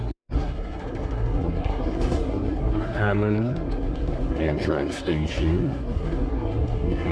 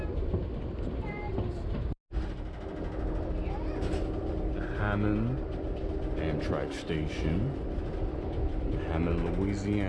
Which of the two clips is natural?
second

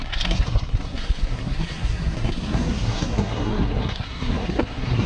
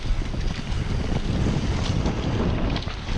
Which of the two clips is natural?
second